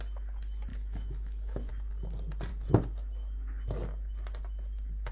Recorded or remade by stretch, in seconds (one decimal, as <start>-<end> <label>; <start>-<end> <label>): 0.0-0.7 recorded; 0.7-1.7 remade; 1.7-5.1 recorded